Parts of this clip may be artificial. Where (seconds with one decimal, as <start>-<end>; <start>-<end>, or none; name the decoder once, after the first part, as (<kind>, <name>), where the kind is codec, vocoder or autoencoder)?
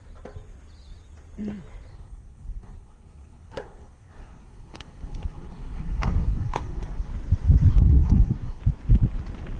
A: 1.9-7.1 (codec, SNAC); 7.7-8.6